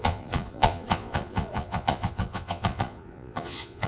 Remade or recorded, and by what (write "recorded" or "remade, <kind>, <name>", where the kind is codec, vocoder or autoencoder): remade, vocoder, Vocos